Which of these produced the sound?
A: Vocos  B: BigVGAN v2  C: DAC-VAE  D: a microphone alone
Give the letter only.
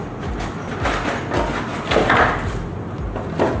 D